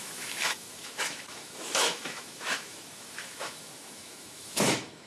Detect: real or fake fake